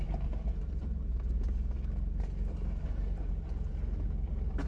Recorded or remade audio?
recorded